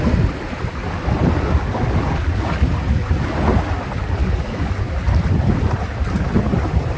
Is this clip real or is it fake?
real